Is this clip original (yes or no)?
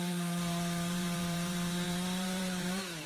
no